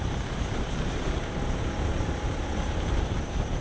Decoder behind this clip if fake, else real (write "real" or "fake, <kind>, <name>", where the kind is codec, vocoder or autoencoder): fake, vocoder, BigVGAN v2